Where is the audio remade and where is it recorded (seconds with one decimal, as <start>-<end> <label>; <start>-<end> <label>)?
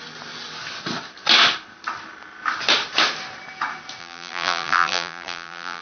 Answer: 0.0-4.0 recorded; 4.0-5.8 remade